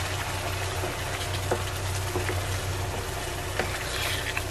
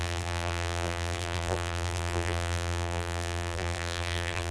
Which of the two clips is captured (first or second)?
first